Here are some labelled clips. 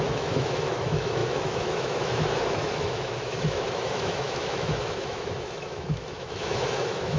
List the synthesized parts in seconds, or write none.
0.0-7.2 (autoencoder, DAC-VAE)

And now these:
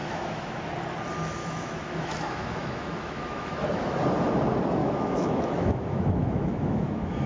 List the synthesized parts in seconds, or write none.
0.0-0.6 (autoencoder, DAC-VAE); 1.4-4.0; 4.8-7.3

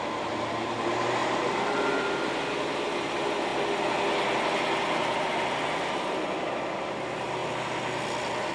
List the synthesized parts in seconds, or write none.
none

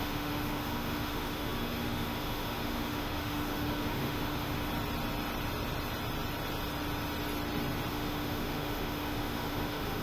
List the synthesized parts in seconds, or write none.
0.0-4.7 (autoencoder, DAC-VAE); 7.9-10.0

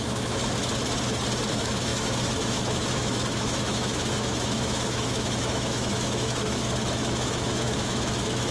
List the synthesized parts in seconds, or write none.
0.0-0.4 (autoencoder, DAC-VAE); 1.5-8.5